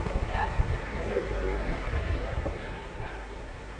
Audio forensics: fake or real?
fake